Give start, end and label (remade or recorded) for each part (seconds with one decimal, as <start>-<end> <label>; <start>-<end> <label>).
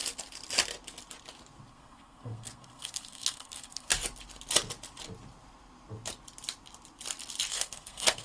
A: 0.0-1.7 recorded; 1.7-3.9 remade; 3.9-7.5 recorded; 7.5-8.2 remade